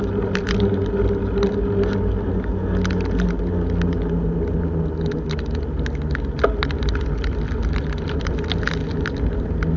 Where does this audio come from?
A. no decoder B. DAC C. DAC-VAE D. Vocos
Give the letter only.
A